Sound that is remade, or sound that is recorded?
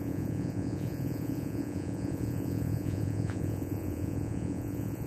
remade